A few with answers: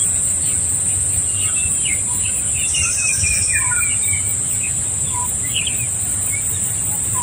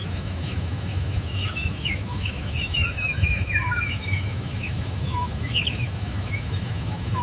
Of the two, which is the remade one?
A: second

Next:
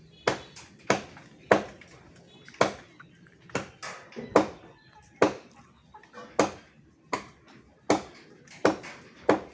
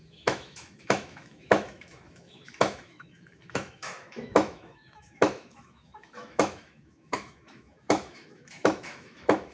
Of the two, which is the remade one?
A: second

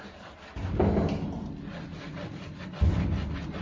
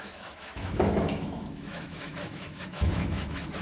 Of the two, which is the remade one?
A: second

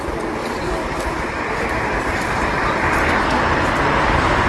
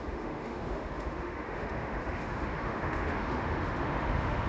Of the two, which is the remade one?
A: second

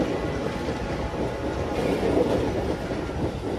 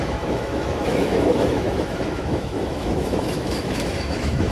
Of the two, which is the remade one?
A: second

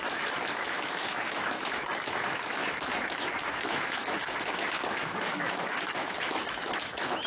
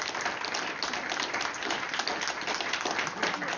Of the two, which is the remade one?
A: first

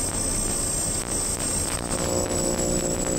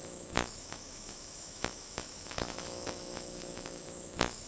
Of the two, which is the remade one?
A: second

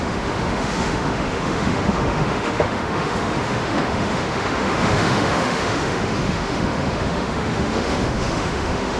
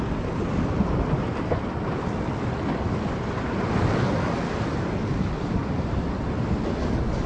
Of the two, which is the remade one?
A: first